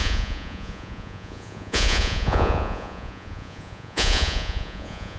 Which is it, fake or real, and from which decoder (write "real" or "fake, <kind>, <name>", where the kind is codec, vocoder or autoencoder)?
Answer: fake, vocoder, Vocos